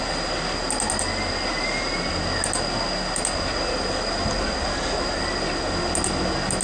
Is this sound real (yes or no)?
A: yes